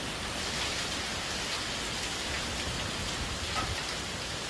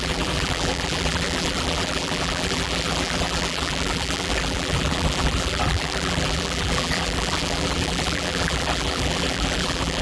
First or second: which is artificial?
second